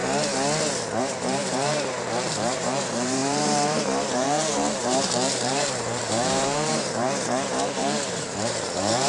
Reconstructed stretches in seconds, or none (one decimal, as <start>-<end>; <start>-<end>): 1.0-9.1

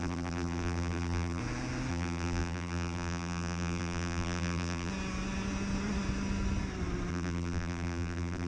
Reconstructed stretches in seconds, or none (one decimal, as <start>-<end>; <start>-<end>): 0.0-1.4; 1.9-4.9; 7.1-8.5

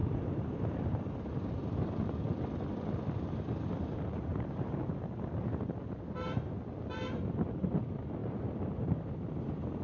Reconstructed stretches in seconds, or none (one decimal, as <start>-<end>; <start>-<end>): 0.0-1.9; 4.3-5.6; 8.2-9.8

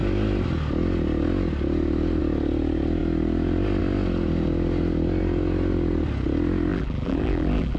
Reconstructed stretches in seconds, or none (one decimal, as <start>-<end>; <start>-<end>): 6.7-7.8

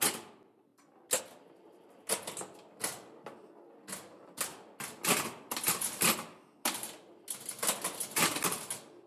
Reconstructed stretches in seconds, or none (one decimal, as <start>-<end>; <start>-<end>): none

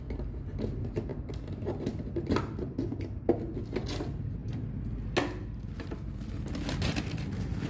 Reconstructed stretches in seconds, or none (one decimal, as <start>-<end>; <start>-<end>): none

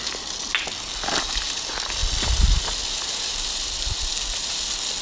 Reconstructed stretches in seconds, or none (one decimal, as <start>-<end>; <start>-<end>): 2.0-2.8

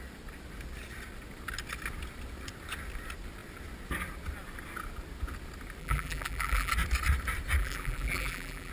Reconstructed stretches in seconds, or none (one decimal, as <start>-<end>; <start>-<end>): 5.8-6.7; 7.6-8.7